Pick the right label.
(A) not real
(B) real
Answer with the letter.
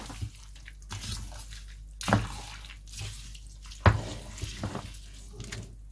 B